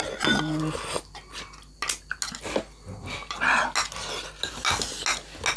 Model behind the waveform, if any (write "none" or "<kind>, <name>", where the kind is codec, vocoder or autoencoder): none